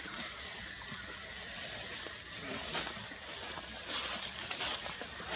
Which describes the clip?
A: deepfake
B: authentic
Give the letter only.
B